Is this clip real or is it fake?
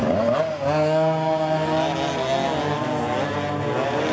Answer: real